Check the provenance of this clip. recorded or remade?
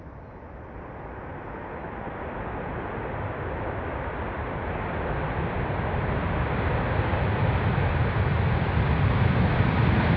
recorded